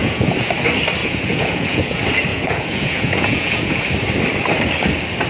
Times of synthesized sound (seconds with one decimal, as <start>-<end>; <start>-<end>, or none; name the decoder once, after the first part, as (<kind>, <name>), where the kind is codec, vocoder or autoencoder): 0.0-0.5 (vocoder, Vocos); 1.0-1.9; 2.3-3.8